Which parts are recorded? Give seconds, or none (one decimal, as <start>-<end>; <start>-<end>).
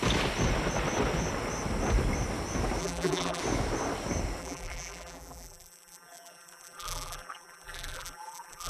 0.0-2.8; 3.4-4.4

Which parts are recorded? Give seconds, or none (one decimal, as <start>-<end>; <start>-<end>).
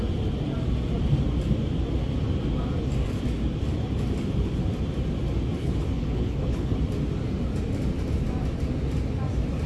0.0-5.6; 6.8-9.7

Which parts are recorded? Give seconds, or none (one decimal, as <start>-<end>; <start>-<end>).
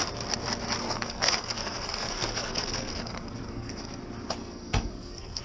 0.0-0.8; 4.0-4.4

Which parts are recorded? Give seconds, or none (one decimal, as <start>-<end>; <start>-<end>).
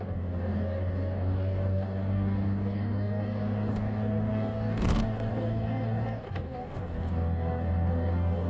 none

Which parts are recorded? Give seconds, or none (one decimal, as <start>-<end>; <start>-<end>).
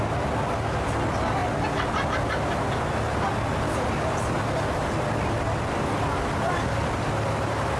0.0-7.8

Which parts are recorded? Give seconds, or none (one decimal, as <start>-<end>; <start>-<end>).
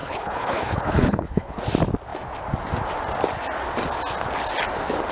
1.6-5.1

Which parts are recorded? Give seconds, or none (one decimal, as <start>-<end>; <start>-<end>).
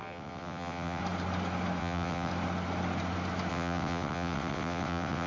1.0-1.8; 2.3-3.5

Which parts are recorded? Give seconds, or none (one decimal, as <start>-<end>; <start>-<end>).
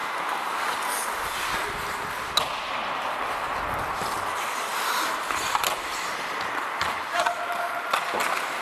1.4-8.6